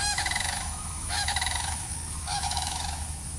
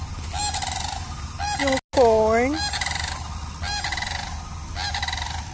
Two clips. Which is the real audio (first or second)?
second